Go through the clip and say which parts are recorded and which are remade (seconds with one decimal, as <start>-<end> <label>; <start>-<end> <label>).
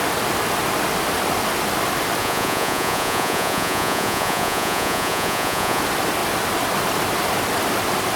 0.0-2.2 recorded; 2.2-5.8 remade; 5.8-8.2 recorded